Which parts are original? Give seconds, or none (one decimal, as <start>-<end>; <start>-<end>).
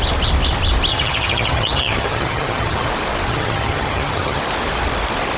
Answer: 0.0-0.9; 2.9-3.3; 4.4-5.4